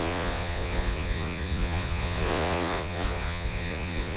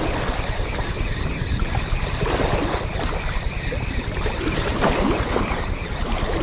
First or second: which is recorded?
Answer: second